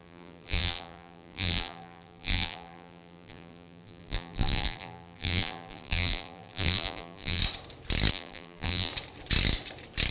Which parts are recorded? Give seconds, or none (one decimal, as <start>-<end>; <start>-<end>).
7.4-8.1; 8.9-10.1